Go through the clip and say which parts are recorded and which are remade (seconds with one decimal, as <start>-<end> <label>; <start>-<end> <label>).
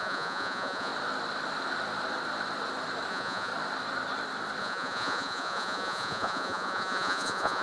0.0-0.9 remade; 0.9-3.1 recorded; 3.1-3.5 remade; 3.5-4.6 recorded; 4.6-7.6 remade